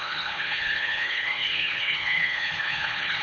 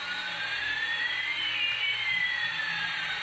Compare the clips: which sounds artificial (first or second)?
first